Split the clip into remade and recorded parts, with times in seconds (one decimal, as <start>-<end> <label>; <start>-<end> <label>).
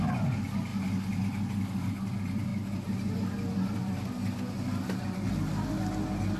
0.0-6.4 recorded